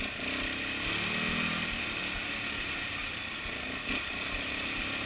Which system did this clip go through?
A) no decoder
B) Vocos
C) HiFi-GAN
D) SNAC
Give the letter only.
A